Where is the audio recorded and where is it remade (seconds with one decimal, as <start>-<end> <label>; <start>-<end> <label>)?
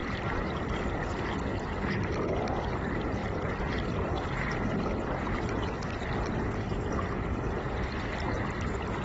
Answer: 0.0-1.1 remade; 1.1-3.2 recorded; 3.2-4.1 remade; 4.1-9.0 recorded